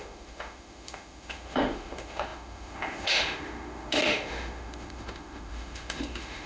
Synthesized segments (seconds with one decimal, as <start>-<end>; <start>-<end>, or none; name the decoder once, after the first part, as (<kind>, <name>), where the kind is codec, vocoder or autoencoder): 0.0-6.5 (autoencoder, DAC-VAE)